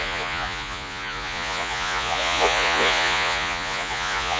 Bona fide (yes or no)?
no